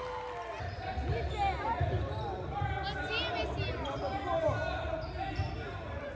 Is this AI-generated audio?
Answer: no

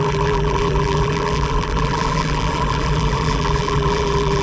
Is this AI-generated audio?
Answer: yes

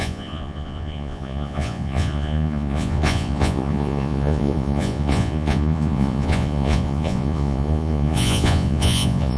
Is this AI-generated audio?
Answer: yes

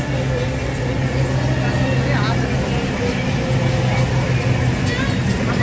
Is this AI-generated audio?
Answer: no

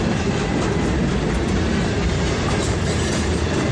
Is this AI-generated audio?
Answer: no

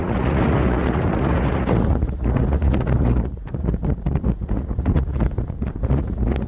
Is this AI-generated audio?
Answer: yes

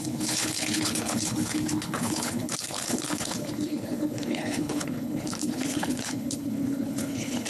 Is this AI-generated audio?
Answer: yes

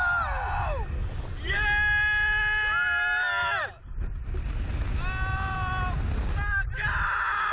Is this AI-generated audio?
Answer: no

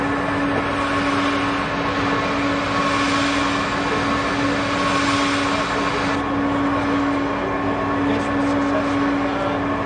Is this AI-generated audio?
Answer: no